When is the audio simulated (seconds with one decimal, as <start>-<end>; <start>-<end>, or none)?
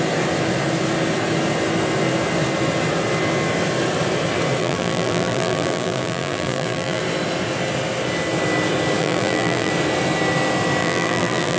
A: 4.6-7.0; 9.0-9.7; 10.8-11.6